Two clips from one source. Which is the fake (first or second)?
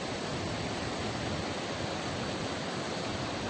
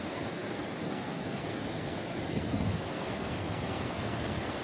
second